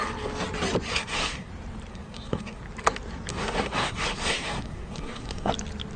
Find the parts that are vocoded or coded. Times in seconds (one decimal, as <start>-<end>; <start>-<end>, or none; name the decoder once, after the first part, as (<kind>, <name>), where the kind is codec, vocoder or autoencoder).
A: 0.9-1.5 (codec, SNAC); 1.9-2.6; 3.3-5.5